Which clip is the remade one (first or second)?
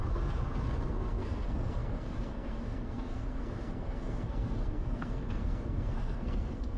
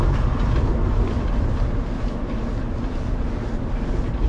first